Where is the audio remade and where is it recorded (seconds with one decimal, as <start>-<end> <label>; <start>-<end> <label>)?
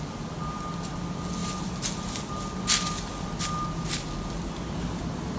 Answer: 0.0-5.4 recorded